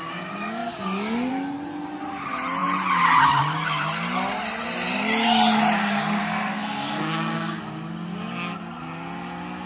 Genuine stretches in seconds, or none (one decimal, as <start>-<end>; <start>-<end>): 0.0-6.2; 7.6-9.7